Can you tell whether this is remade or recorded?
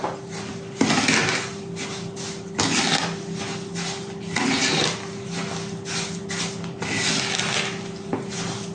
recorded